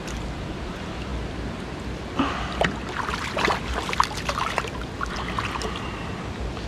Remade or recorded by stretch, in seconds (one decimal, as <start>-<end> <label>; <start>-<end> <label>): 0.0-6.7 recorded